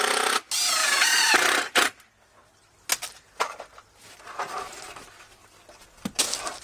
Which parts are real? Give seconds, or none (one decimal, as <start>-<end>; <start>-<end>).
0.0-0.8; 1.5-6.6

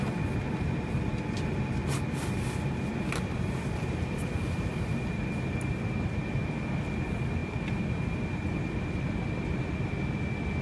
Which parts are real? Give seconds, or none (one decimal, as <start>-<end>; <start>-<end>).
0.0-10.6

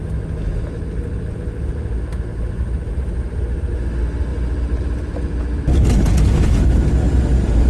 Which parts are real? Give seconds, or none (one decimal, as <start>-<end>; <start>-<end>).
0.0-2.3; 3.9-7.7

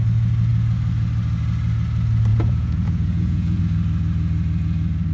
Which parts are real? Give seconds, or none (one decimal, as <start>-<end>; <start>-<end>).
0.0-2.3; 3.6-5.1